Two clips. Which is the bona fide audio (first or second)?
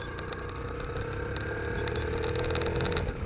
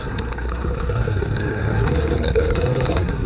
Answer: first